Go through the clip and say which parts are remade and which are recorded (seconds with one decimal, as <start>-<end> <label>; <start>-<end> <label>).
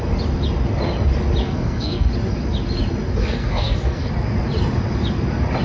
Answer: 0.0-1.4 recorded; 1.4-2.1 remade; 2.1-3.2 recorded; 3.2-4.1 remade; 4.1-5.6 recorded